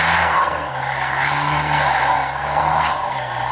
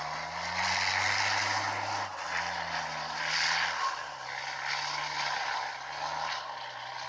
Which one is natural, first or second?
second